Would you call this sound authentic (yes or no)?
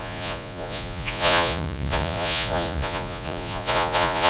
no